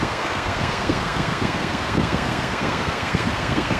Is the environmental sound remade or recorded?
remade